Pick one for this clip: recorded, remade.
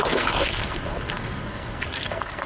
remade